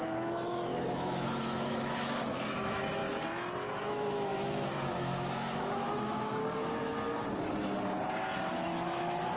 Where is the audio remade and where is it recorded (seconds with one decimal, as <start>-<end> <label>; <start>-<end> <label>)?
0.0-3.0 remade; 3.0-3.9 recorded; 3.9-6.4 remade; 6.4-8.5 recorded; 8.5-9.4 remade